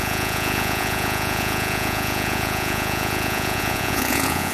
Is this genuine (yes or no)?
no